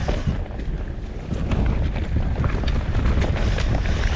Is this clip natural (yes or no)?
yes